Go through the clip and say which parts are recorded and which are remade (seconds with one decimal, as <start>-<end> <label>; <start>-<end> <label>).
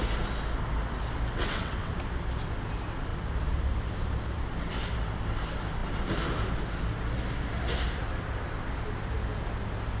0.0-1.3 recorded; 1.3-1.9 remade; 1.9-10.0 recorded